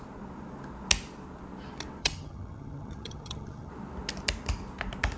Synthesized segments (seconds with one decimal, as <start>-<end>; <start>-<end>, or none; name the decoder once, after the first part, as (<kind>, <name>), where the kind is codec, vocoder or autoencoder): 2.0-3.7 (vocoder, HiFi-GAN)